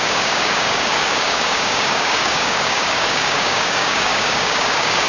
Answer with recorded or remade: remade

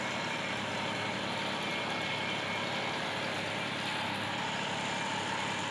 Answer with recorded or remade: recorded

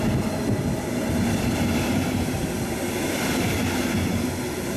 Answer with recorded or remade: recorded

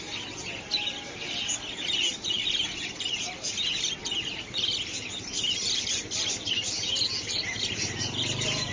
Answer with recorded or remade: recorded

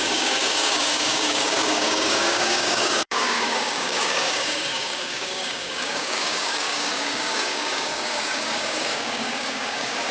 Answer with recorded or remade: remade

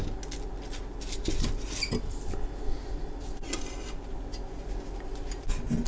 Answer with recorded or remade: recorded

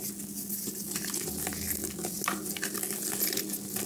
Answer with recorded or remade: recorded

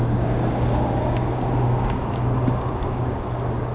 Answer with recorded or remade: remade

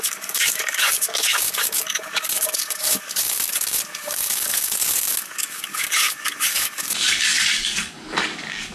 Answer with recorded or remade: remade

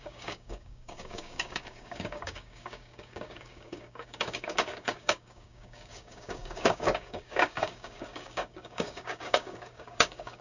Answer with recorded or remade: remade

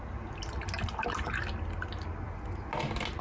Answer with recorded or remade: recorded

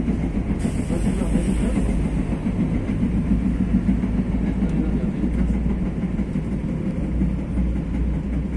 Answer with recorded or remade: recorded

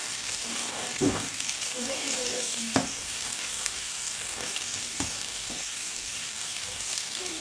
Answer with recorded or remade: remade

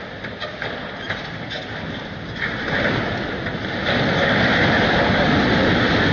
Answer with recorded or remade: recorded